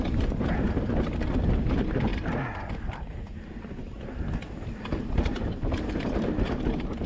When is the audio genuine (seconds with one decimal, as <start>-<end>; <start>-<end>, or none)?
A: 0.0-7.1